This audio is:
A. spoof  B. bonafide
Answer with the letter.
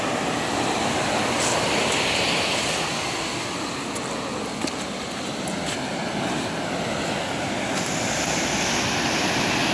B